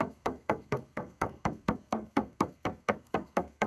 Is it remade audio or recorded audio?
remade